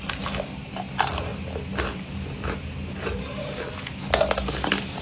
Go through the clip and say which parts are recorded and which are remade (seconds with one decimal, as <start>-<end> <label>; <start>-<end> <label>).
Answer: 0.0-5.0 recorded

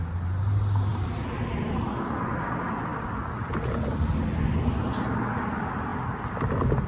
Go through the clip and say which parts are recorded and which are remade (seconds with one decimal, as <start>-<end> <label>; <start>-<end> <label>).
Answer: 0.0-6.9 recorded

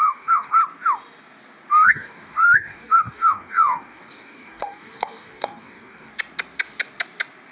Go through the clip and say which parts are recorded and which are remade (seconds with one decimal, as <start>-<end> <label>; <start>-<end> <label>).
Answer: 0.0-0.6 remade; 0.6-1.7 recorded; 1.7-6.1 remade; 6.1-7.5 recorded

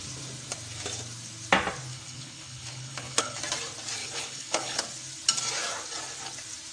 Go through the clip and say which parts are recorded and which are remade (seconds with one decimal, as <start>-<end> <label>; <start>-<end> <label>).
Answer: 0.0-1.9 recorded; 1.9-3.4 remade; 3.4-4.0 recorded; 4.0-4.8 remade; 4.8-6.7 recorded

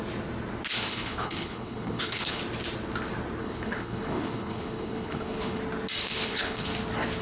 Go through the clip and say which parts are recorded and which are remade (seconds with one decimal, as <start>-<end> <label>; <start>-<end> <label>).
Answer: 0.0-0.7 recorded; 0.7-2.4 remade; 2.4-3.4 recorded; 3.4-5.6 remade; 5.6-6.0 recorded; 6.0-6.7 remade; 6.7-7.2 recorded

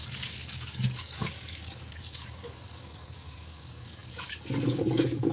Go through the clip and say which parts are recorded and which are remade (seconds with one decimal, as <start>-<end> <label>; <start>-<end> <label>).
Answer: 0.0-5.3 remade